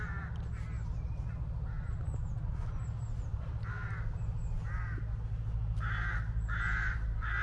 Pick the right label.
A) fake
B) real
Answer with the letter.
B